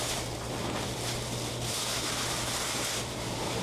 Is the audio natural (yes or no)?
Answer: no